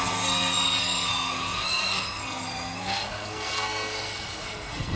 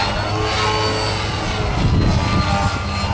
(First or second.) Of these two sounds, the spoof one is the first